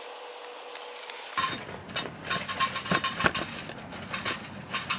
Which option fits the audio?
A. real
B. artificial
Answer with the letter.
A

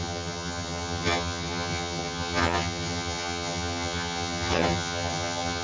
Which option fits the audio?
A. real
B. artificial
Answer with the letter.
B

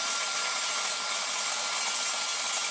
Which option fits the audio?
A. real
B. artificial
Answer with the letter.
A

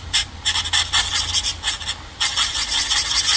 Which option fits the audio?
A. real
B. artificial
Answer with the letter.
A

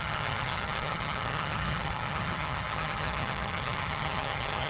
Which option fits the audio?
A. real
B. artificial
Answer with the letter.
B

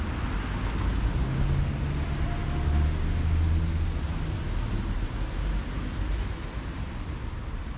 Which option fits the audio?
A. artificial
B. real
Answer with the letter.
B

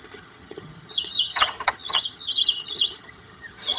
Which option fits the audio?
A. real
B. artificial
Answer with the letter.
B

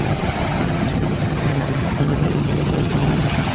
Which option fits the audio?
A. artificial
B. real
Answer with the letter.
A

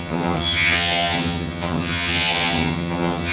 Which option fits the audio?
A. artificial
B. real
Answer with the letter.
A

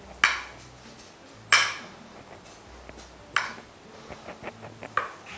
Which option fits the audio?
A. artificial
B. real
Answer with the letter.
B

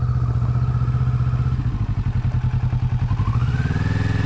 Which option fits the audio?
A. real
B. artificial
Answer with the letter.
A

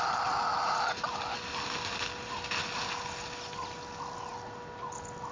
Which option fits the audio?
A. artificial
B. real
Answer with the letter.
B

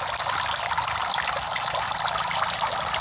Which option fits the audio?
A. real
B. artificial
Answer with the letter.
A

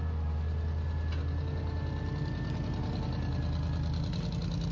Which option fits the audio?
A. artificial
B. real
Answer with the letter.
B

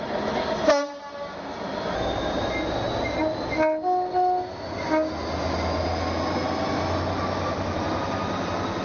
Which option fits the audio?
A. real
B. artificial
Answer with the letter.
A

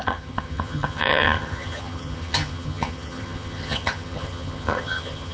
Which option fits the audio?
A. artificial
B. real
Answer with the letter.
A